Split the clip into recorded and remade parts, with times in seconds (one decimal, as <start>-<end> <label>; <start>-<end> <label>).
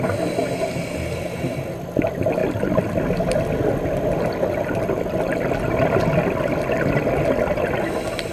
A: 0.0-8.3 recorded